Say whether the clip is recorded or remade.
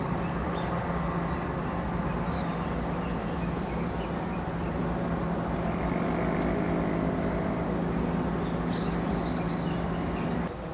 recorded